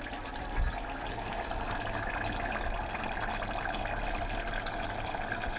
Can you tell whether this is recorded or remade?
recorded